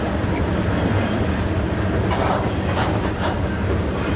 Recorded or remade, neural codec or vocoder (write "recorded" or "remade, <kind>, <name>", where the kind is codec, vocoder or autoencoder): recorded